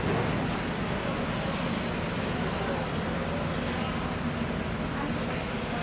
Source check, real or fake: real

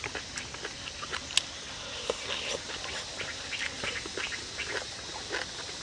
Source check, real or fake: real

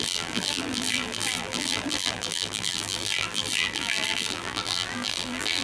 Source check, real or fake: fake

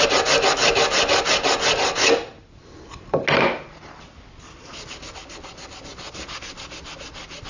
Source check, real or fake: real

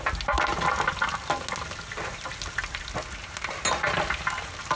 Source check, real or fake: real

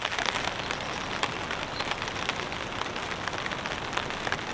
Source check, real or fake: real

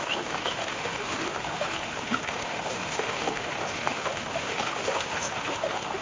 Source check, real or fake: fake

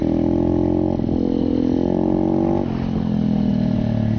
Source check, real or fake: real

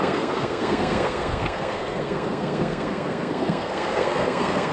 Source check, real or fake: fake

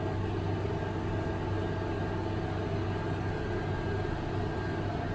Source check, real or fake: real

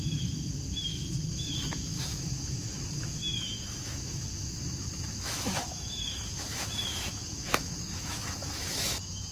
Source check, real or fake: fake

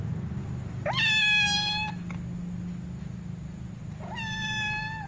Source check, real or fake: real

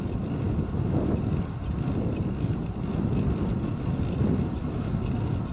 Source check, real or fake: real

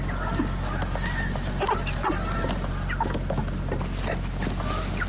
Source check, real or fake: real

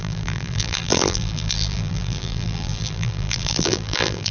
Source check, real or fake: fake